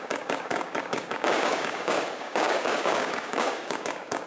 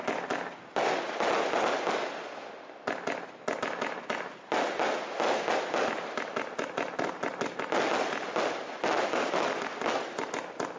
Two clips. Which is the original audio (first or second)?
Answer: second